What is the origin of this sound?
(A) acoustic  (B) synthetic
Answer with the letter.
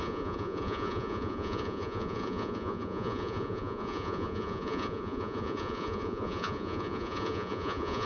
B